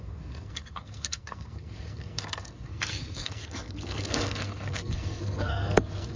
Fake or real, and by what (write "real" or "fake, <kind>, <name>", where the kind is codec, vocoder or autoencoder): fake, codec, SNAC